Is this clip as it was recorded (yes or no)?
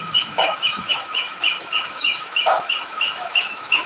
no